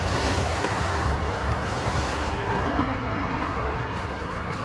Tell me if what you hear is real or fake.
fake